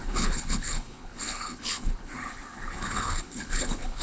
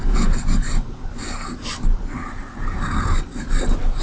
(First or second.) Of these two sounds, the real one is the second